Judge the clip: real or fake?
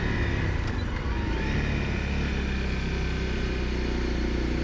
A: real